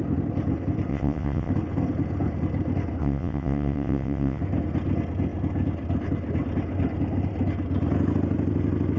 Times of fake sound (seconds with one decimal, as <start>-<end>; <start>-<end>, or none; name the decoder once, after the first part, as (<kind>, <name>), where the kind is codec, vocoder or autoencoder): 0.9-1.5 (vocoder, WaveNeXt); 3.0-4.4